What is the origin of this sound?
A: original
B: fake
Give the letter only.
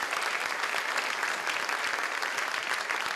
A